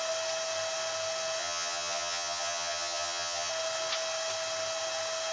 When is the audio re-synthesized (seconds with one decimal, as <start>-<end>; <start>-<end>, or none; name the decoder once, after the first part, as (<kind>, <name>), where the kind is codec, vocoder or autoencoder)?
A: 1.4-3.5 (vocoder, HiFi-GAN)